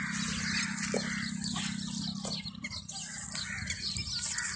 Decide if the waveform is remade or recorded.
recorded